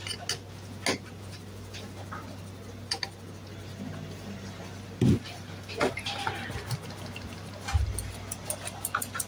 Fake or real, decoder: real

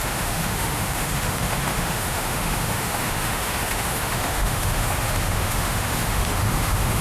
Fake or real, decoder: fake, autoencoder, DAC-VAE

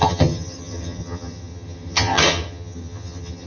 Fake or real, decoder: fake, vocoder, HiFi-GAN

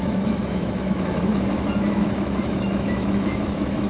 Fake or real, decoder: fake, autoencoder, DAC-VAE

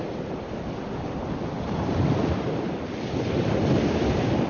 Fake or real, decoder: real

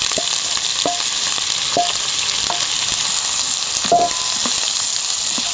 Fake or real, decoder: real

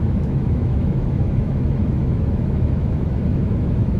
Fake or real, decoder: fake, autoencoder, DAC-VAE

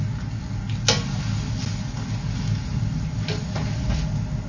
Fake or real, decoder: real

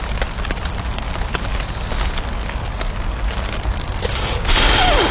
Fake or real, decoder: real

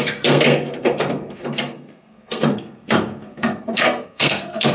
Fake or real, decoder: fake, codec, SNAC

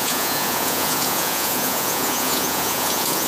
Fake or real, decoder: fake, vocoder, Vocos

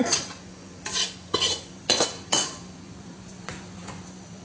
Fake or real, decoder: fake, vocoder, Vocos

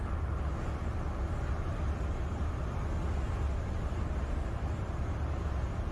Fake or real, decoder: real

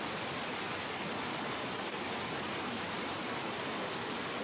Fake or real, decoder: real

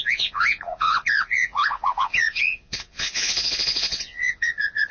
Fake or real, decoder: fake, vocoder, Vocos